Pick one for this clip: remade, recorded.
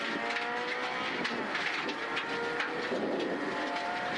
recorded